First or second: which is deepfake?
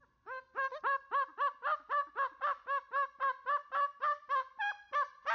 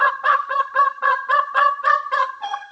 second